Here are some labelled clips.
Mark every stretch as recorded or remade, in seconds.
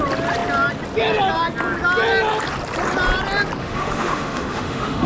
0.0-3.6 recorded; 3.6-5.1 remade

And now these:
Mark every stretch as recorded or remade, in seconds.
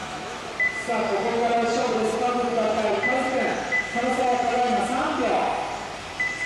0.0-0.5 remade; 0.5-6.5 recorded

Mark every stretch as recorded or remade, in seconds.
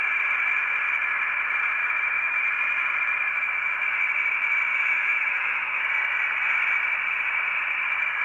0.0-1.8 recorded; 1.8-2.4 remade; 2.4-4.7 recorded; 4.7-5.8 remade; 5.8-8.2 recorded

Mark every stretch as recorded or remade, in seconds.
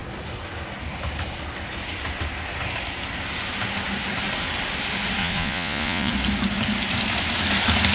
0.0-5.2 recorded; 5.2-6.1 remade; 6.1-7.9 recorded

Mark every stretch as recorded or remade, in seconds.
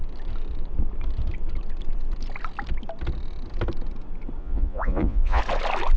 0.0-4.4 recorded; 4.4-5.4 remade; 5.4-6.0 recorded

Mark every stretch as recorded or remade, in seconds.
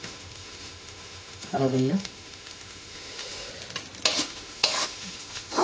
0.0-3.5 remade; 3.5-4.2 recorded; 4.2-5.6 remade